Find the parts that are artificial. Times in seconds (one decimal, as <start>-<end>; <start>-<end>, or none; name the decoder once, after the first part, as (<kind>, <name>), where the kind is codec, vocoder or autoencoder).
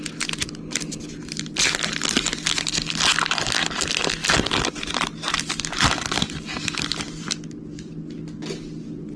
none